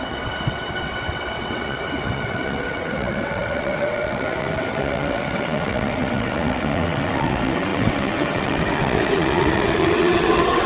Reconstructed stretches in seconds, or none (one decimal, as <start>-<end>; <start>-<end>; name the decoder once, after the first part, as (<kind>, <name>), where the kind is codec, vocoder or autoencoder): 0.0-10.7 (vocoder, WaveNeXt)